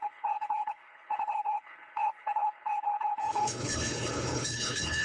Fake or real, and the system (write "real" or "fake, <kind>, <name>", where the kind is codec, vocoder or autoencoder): fake, codec, HILCodec